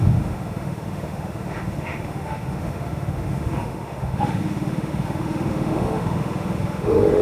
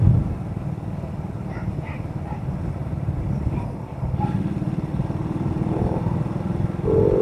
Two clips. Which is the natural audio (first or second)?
second